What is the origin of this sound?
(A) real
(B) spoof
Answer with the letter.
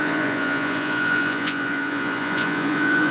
B